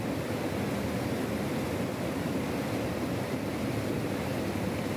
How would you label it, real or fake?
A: real